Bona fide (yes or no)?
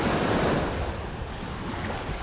yes